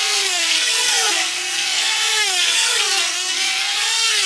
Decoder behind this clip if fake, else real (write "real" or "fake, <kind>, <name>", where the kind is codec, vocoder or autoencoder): fake, codec, SNAC